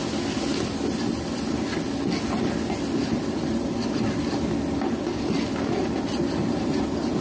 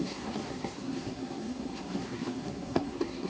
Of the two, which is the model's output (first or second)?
second